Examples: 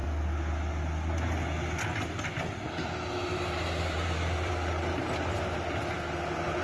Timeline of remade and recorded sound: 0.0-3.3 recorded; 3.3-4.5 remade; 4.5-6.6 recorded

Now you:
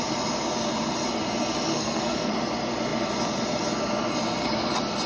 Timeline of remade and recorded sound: 0.0-1.7 recorded; 1.7-2.3 remade; 2.3-5.1 recorded

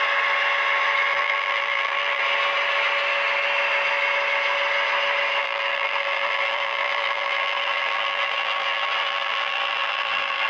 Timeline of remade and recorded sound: 0.0-1.1 recorded; 1.1-2.2 remade; 2.2-5.4 recorded; 5.4-10.5 remade

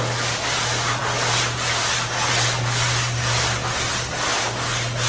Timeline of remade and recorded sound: 0.0-5.1 recorded

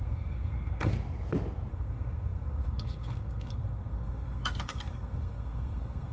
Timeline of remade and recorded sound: 0.0-0.9 remade; 0.9-1.7 recorded; 1.7-6.1 remade

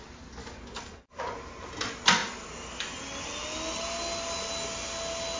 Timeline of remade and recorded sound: 0.0-0.4 recorded; 0.4-1.2 remade; 1.2-5.4 recorded